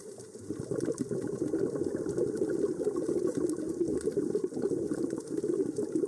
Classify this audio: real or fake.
real